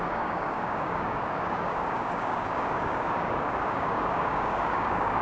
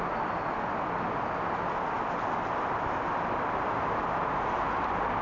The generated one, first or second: first